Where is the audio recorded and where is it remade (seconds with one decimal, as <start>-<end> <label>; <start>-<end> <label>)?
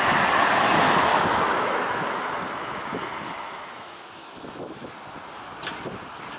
0.0-1.1 recorded; 1.1-4.9 remade; 4.9-6.4 recorded